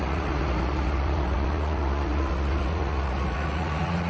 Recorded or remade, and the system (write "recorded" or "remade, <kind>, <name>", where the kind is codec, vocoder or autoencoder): remade, vocoder, Vocos